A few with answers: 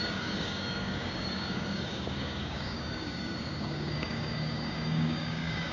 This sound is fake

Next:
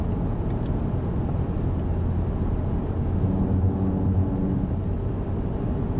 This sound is real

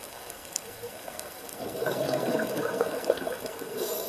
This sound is fake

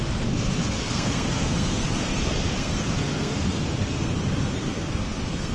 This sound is fake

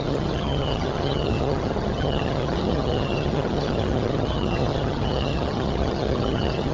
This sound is fake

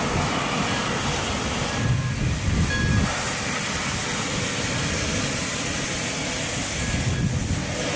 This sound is real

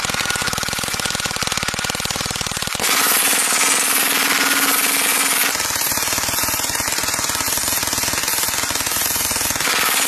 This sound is real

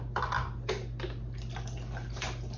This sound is real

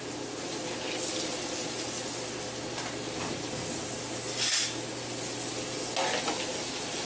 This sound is real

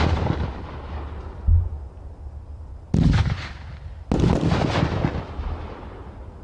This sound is real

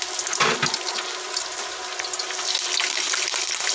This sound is real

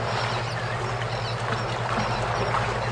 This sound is real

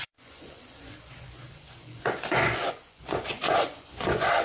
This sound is fake